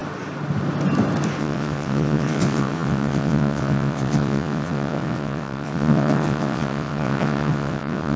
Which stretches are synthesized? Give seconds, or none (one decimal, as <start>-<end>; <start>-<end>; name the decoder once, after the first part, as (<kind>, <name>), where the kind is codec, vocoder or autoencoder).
1.4-8.2 (vocoder, WaveNeXt)

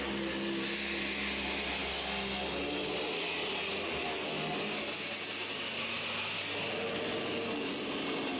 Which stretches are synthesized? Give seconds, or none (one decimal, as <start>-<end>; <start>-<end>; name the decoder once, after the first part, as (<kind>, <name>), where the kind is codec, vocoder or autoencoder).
none

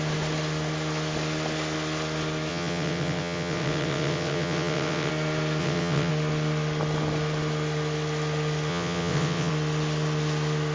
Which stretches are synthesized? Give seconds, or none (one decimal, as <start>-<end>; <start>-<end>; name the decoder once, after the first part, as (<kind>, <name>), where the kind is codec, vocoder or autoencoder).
2.5-5.1 (vocoder, WaveNeXt); 5.6-6.1; 8.7-9.5

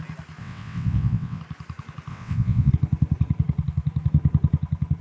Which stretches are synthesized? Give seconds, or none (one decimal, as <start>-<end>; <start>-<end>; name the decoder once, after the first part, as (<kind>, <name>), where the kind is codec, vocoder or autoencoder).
0.4-1.4 (vocoder, WaveNeXt); 2.1-2.7